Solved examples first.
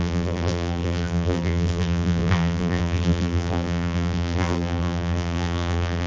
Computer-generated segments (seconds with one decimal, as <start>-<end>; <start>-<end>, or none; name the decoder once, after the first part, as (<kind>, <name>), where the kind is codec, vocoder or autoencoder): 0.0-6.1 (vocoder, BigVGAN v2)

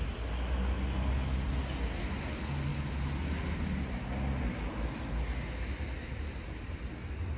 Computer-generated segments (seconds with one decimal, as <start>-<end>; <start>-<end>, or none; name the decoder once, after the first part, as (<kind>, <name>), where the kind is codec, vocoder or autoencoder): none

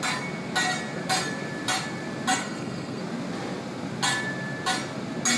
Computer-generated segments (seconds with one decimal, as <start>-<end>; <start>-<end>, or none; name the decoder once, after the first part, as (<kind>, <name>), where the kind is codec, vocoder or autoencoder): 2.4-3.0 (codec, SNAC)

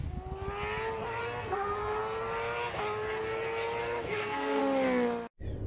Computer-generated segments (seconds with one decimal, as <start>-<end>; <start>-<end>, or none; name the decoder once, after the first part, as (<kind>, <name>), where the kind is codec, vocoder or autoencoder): 1.2-2.0 (codec, SNAC); 3.8-4.6